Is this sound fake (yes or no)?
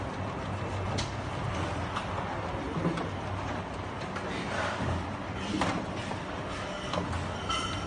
no